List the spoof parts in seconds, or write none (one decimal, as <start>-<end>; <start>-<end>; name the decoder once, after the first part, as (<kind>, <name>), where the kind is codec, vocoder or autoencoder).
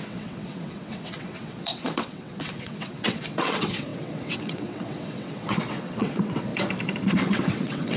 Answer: 0.0-6.5 (vocoder, WaveNeXt); 7.1-8.0